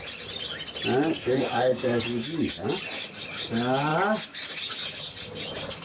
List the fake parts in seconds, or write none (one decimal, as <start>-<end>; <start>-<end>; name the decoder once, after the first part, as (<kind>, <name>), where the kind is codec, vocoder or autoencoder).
1.1-2.0 (codec, SNAC)